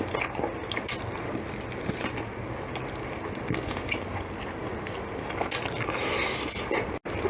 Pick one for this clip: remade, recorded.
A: recorded